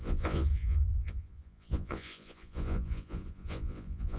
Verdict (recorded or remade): remade